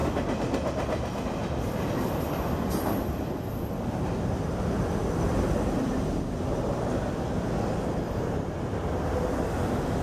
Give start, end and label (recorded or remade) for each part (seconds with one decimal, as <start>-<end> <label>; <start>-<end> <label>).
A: 0.0-10.0 recorded